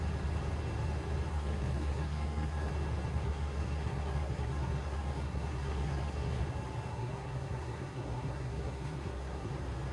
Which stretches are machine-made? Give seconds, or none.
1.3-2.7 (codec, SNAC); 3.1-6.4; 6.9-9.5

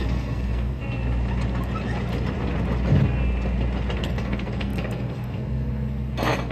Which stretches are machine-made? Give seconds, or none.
0.0-0.8 (codec, SNAC); 4.0-6.5

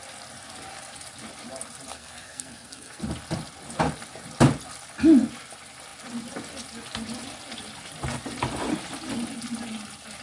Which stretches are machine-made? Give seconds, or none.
1.9-3.0 (codec, SNAC)

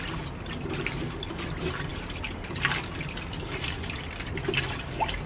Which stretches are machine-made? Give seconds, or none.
none

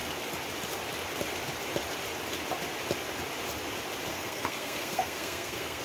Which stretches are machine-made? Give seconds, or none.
4.1-5.8 (codec, SNAC)

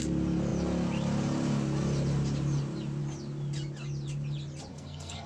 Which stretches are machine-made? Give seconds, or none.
4.7-5.3 (codec, SNAC)

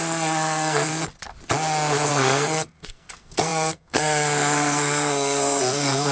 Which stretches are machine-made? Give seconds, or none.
0.0-0.9 (codec, SNAC); 2.1-6.1

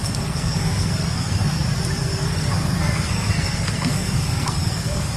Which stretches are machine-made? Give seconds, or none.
0.0-1.6 (codec, SNAC); 2.0-5.2